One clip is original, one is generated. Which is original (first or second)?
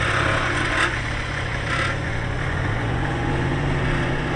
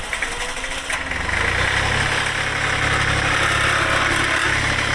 second